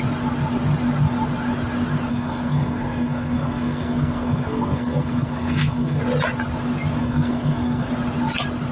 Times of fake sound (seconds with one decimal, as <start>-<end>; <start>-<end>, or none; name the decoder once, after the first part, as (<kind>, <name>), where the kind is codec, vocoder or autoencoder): 2.1-6.0 (codec, SNAC); 7.0-7.9